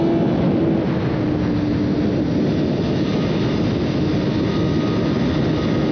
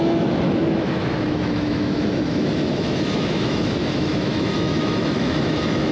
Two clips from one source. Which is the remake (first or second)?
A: second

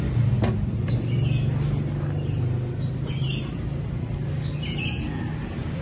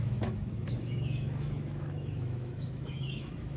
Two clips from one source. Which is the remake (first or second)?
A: second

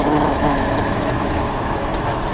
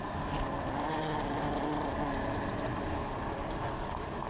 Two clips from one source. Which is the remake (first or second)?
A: first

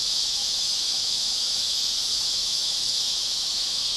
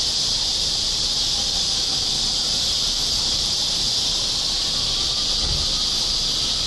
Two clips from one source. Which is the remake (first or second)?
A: first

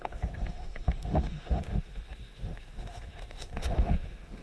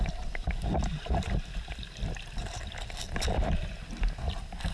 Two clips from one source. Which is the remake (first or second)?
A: first